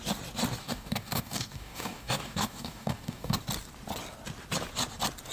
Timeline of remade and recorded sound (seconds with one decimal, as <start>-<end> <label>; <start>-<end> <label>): 0.0-0.6 recorded; 0.6-3.4 remade; 3.4-5.3 recorded